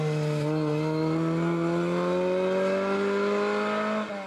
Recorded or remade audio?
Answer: recorded